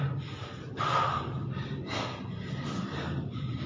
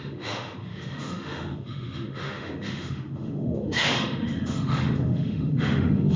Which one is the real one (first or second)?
first